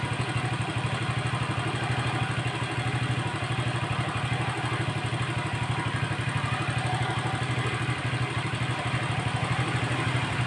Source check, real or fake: real